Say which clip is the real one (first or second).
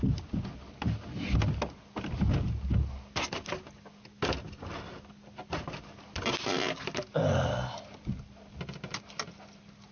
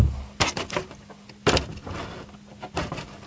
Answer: first